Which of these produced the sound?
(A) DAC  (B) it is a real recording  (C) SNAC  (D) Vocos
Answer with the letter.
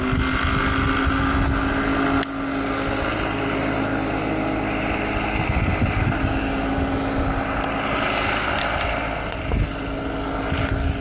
B